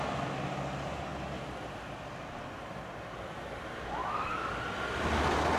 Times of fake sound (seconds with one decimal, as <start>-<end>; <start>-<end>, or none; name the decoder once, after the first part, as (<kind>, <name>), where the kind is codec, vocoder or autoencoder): 4.0-4.6 (codec, DAC)